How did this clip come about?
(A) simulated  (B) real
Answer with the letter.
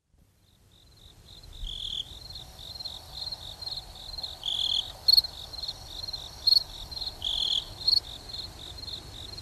A